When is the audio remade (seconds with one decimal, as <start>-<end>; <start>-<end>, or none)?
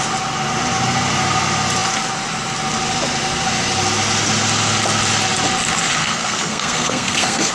6.0-7.5